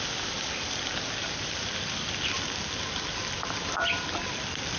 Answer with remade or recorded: recorded